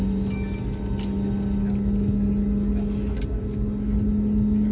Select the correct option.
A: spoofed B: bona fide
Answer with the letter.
B